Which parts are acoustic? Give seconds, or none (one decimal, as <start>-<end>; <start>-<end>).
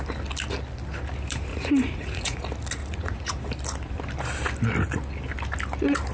0.0-1.5; 2.4-2.8; 3.4-6.1